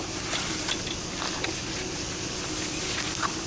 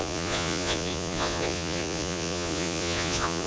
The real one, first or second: first